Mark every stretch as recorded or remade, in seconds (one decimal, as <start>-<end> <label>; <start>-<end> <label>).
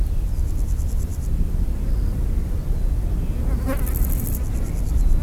0.0-5.2 recorded